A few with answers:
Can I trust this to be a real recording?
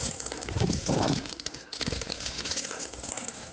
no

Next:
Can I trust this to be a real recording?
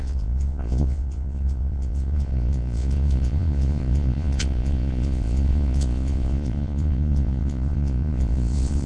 no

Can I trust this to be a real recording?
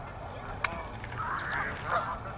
yes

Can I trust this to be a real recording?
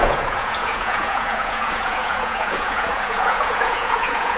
no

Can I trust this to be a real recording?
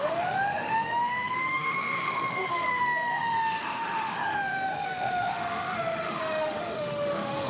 no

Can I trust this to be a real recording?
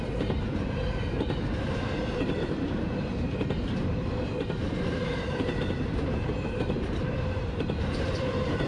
no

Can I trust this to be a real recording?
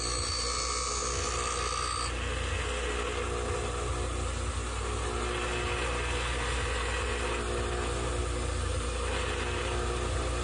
yes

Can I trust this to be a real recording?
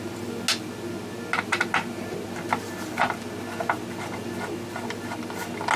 yes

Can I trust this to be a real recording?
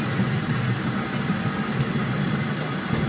yes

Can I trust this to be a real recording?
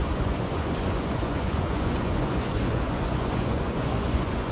no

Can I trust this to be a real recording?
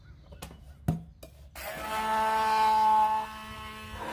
yes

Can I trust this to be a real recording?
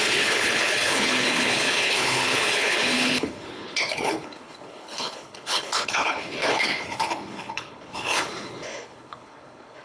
no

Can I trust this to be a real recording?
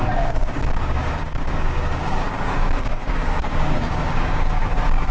no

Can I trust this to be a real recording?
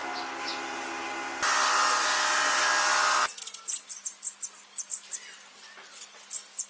yes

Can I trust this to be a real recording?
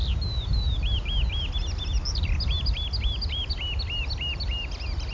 yes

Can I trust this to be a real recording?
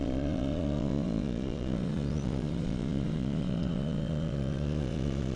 no